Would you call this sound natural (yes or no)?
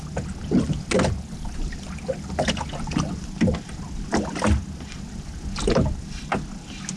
yes